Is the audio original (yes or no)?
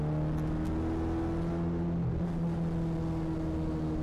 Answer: yes